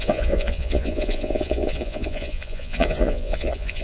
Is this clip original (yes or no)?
no